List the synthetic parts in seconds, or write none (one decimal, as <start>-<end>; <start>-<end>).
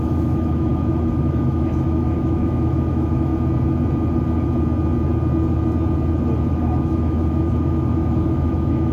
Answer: 0.0-3.3; 6.5-8.9